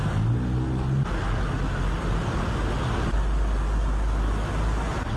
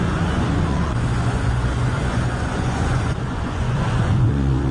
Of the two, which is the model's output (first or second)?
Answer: second